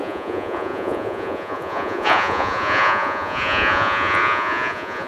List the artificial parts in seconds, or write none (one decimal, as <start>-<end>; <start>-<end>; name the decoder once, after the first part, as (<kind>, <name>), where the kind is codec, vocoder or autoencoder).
0.0-5.1 (vocoder, Vocos)

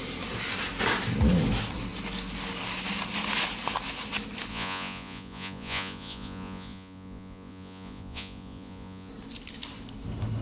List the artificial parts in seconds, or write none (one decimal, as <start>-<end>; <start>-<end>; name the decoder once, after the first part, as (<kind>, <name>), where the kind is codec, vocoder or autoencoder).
4.5-9.1 (vocoder, Vocos)

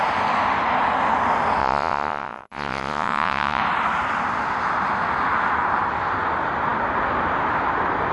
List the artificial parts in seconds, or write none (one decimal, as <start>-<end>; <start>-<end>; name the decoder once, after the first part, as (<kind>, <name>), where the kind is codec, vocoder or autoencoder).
1.6-3.6 (vocoder, Vocos)